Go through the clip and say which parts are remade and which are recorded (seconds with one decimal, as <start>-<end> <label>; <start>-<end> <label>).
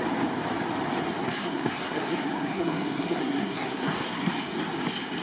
0.0-1.2 recorded; 1.2-4.3 remade; 4.3-5.2 recorded